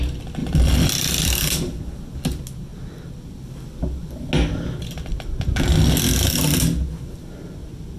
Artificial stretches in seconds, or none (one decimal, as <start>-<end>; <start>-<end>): none